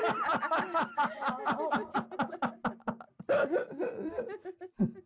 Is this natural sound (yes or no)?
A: yes